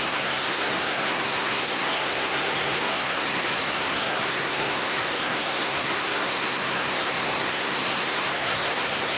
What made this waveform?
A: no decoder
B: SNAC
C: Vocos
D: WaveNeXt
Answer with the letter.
B